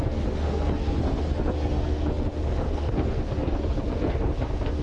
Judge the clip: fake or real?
fake